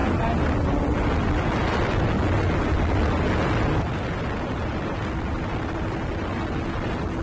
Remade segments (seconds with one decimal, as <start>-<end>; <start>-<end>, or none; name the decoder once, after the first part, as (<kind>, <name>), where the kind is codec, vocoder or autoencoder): none